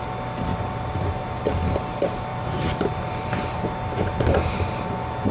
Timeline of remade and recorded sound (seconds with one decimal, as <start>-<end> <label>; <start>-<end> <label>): 0.0-0.5 recorded; 0.5-1.4 remade; 1.4-2.3 recorded; 2.3-4.8 remade; 4.8-5.3 recorded